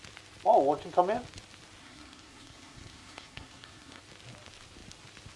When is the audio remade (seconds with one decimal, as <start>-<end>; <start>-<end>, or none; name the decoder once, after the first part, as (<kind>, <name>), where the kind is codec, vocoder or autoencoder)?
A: 1.8-4.0 (codec, SNAC)